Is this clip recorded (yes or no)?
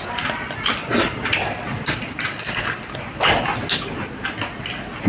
yes